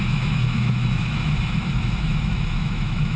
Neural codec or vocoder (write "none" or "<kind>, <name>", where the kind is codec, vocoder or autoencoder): autoencoder, DAC-VAE